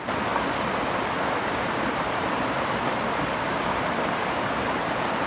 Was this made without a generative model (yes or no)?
yes